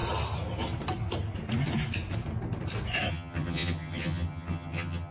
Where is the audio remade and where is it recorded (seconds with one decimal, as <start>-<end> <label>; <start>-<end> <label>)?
0.0-3.1 recorded; 3.1-5.1 remade